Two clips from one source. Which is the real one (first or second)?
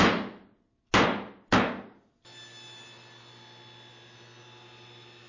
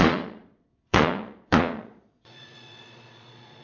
first